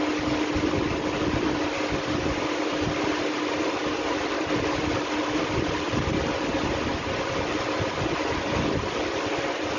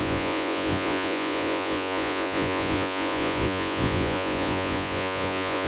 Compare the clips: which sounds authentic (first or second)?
first